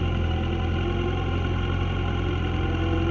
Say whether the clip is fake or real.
real